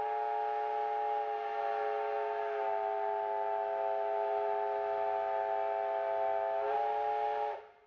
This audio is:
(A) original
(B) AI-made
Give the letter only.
A